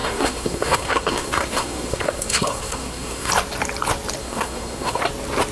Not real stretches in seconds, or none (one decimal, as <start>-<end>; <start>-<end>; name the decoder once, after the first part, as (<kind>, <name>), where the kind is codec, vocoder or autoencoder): 0.0-3.3 (codec, SNAC); 4.2-5.0